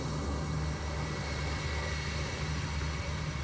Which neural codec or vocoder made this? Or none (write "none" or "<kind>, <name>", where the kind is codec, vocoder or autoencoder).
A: none